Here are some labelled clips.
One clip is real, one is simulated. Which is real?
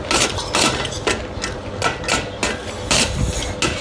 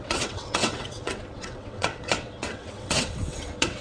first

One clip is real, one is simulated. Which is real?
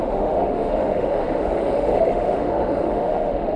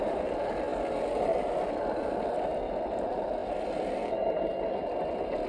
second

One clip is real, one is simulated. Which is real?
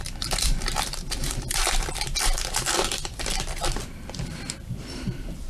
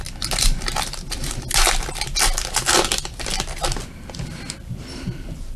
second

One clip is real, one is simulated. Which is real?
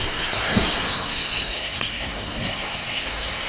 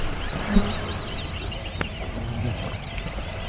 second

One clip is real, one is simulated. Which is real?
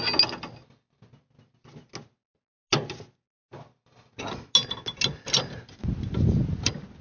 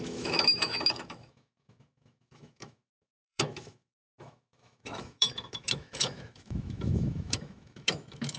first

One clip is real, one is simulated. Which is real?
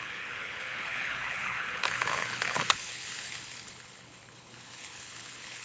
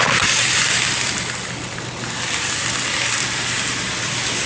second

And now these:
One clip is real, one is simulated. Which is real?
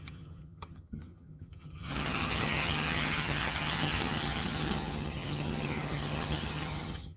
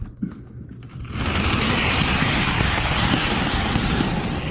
second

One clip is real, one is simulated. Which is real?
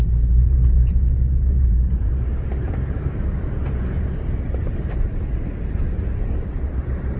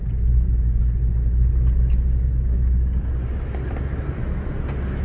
second